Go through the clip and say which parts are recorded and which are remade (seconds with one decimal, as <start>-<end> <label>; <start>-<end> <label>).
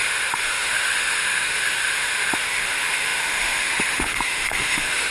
0.0-5.1 remade